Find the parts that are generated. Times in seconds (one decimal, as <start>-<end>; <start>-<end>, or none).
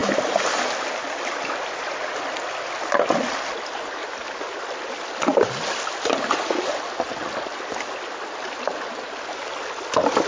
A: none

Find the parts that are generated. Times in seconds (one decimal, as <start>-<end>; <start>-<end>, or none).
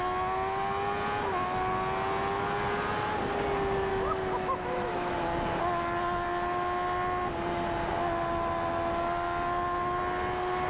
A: 3.9-5.1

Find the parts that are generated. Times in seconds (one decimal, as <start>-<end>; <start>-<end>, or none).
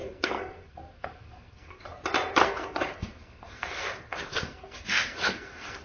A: 0.0-1.8; 2.4-5.8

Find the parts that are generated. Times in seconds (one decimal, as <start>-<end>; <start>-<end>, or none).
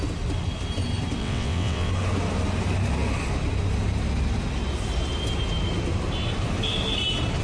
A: 1.2-1.9